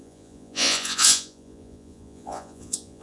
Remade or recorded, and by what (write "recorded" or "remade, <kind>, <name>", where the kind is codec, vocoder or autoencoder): remade, vocoder, Vocos